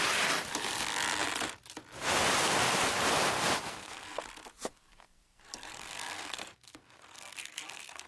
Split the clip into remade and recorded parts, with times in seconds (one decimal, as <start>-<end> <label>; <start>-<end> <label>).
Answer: 0.0-3.7 recorded; 3.7-4.2 remade; 4.2-4.7 recorded; 4.7-8.1 remade